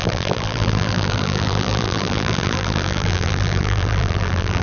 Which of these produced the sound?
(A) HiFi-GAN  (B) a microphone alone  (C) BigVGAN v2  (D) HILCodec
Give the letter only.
C